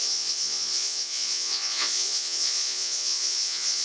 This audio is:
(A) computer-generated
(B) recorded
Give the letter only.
A